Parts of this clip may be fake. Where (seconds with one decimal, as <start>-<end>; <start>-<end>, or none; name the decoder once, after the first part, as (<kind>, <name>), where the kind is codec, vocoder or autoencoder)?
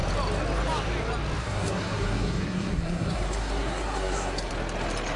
1.4-4.5 (codec, SNAC)